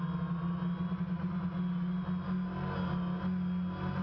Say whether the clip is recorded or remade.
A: recorded